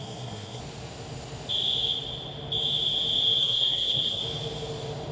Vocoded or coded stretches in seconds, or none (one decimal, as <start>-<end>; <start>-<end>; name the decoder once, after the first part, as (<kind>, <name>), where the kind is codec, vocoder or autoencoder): 0.0-0.6 (codec, SNAC); 3.4-4.2